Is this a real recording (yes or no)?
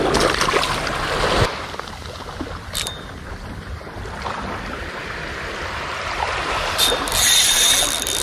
yes